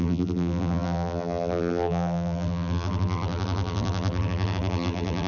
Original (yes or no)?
no